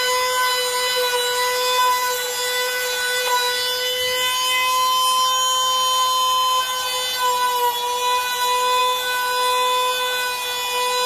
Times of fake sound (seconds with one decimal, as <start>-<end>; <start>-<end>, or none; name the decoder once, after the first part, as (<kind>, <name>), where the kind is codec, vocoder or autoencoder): none